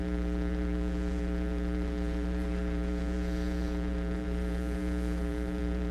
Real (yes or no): no